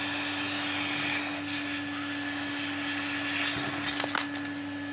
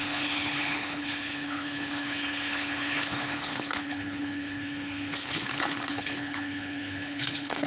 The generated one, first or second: second